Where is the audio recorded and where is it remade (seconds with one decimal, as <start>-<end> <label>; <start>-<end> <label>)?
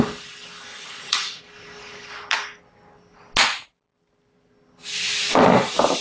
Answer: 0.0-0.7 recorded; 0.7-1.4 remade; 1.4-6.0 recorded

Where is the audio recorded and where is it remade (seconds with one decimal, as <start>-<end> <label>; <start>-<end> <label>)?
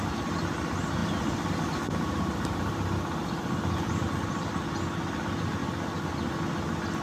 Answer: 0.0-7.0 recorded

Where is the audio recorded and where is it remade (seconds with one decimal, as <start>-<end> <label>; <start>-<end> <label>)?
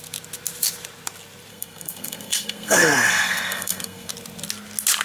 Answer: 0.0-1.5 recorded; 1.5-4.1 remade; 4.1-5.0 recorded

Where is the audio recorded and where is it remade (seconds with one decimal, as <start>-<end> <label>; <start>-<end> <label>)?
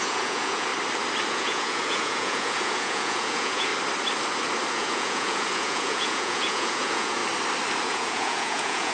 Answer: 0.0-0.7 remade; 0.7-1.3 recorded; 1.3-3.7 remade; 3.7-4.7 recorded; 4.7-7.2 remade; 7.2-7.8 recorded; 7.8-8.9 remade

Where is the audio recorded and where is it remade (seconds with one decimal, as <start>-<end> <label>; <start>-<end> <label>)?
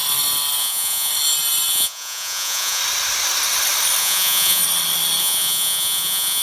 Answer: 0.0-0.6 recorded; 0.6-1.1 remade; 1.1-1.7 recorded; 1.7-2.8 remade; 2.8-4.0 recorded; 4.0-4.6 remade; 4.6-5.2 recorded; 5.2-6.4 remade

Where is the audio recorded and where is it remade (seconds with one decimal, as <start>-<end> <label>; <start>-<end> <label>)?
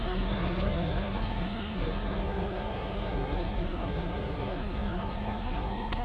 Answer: 0.0-6.0 remade